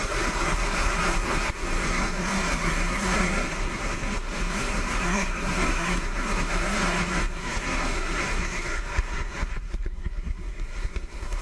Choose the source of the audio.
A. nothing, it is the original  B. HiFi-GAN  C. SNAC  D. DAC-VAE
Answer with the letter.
C